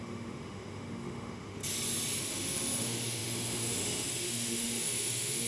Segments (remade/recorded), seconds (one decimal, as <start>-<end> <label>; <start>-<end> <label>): 0.0-1.6 remade; 1.6-2.2 recorded; 2.2-5.5 remade